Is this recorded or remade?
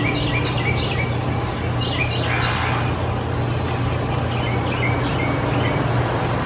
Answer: recorded